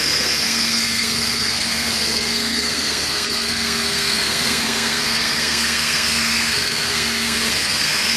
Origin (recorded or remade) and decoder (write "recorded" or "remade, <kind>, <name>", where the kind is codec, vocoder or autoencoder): remade, codec, SNAC